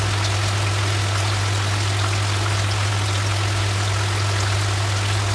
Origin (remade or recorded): recorded